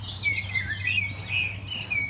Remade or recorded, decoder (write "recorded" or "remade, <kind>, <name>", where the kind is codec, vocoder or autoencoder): recorded